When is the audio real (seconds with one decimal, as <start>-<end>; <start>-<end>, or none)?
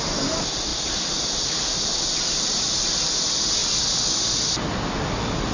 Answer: 0.0-5.5